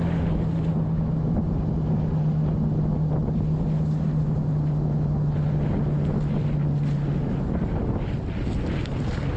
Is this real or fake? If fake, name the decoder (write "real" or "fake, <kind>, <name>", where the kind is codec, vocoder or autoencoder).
real